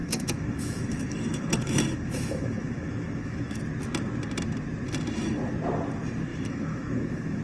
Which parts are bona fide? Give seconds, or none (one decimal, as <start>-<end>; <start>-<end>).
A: 3.6-6.3